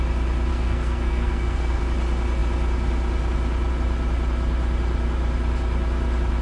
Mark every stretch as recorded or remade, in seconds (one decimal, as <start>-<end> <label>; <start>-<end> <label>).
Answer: 0.0-0.5 recorded; 0.5-1.8 remade; 1.8-6.4 recorded

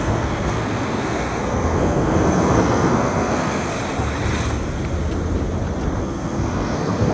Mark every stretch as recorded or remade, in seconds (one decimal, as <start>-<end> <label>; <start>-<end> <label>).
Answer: 0.0-3.7 remade; 3.7-6.0 recorded; 6.0-7.1 remade

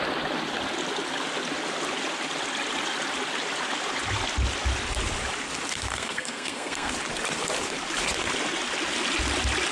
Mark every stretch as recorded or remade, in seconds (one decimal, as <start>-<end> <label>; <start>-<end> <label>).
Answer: 0.0-5.9 recorded; 5.9-6.9 remade; 6.9-9.7 recorded

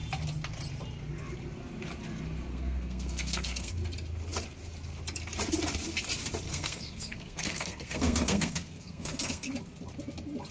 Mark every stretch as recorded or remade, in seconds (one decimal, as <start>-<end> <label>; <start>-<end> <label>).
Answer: 0.0-2.5 recorded; 2.5-3.7 remade; 3.7-6.5 recorded; 6.5-9.5 remade; 9.5-10.5 recorded

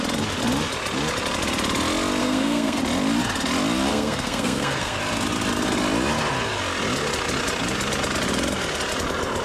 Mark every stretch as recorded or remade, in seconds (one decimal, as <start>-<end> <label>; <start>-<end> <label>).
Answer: 0.0-2.2 recorded; 2.2-2.8 remade; 2.8-3.9 recorded; 3.9-5.0 remade; 5.0-9.4 recorded

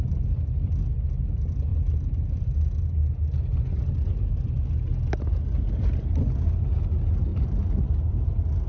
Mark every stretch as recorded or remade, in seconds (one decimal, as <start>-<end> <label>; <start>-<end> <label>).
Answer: 0.0-8.7 recorded

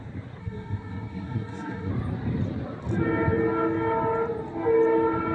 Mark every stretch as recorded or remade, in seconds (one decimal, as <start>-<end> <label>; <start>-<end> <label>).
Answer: 0.0-0.4 recorded; 0.4-1.9 remade; 1.9-5.3 recorded